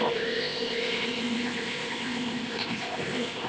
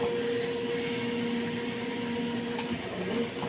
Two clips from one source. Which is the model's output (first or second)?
first